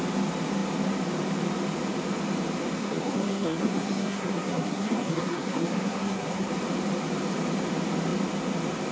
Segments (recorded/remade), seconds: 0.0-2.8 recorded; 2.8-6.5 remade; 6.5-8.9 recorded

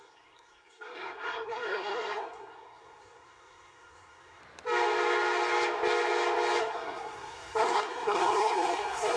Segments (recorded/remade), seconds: 0.0-4.4 remade; 4.4-6.6 recorded; 6.6-9.2 remade